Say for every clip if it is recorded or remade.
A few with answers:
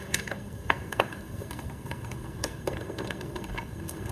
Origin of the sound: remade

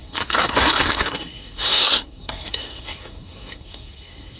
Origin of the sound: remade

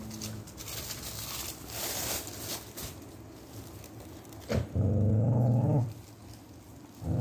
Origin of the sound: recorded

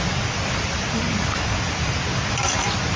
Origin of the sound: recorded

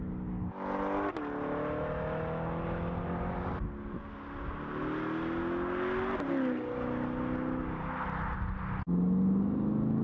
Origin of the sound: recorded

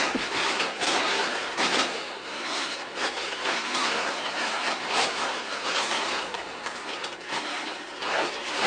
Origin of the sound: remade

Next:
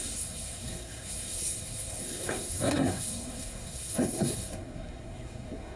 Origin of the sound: remade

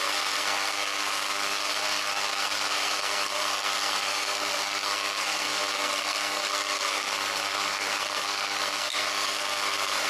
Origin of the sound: remade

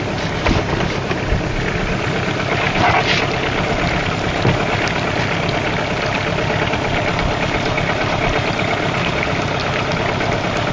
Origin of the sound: recorded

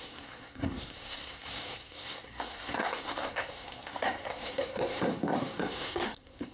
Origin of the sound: remade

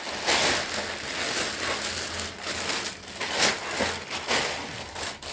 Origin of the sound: recorded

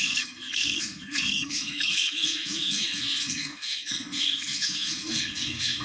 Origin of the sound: remade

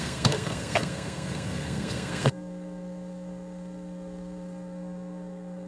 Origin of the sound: remade